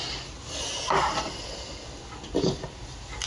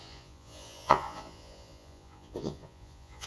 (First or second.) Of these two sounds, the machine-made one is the second